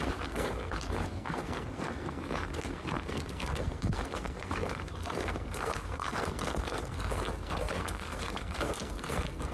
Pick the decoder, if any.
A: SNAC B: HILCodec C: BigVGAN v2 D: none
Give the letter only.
A